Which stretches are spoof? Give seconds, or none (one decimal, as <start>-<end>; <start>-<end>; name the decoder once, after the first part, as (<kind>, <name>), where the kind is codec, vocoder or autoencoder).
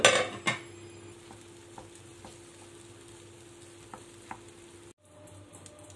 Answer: none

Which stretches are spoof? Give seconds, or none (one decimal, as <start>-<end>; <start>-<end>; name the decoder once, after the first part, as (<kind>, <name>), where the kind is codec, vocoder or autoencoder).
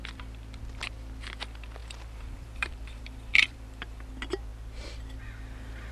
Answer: 1.8-4.1 (vocoder, BigVGAN v2)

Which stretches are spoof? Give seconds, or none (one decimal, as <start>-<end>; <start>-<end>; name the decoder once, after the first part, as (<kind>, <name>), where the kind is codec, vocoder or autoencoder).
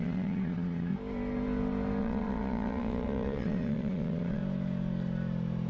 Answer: 0.0-0.9 (vocoder, Vocos); 2.0-4.4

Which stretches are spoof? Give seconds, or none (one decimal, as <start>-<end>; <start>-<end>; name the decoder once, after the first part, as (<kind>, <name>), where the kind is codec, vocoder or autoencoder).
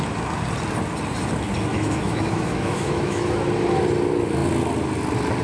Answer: 1.7-3.3 (autoencoder, DAC-VAE)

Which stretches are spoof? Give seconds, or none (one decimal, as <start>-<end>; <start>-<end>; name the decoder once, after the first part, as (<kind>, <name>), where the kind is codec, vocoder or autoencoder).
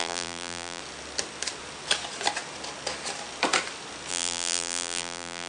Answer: 0.0-0.8 (vocoder, BigVGAN v2); 4.1-5.5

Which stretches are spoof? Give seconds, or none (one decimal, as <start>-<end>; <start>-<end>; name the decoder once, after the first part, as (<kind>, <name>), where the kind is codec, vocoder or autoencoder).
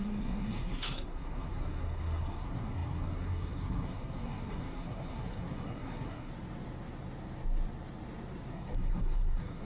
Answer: 0.0-6.3 (codec, SNAC); 8.5-9.6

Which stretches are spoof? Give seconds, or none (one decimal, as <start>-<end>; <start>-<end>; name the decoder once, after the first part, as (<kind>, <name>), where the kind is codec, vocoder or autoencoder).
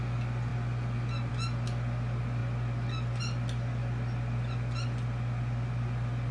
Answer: none